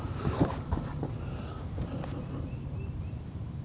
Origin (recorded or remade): remade